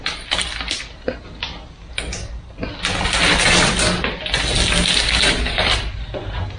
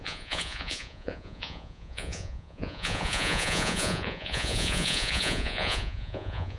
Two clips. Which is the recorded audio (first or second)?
first